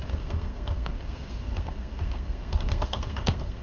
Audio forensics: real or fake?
fake